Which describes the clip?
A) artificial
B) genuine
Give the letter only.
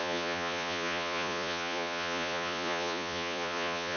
A